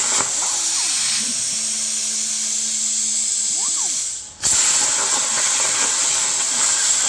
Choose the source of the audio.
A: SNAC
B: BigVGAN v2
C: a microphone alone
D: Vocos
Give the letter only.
C